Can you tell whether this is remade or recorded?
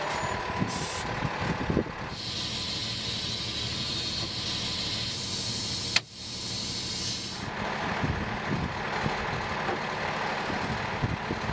recorded